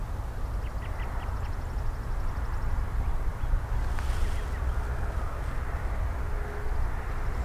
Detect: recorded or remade recorded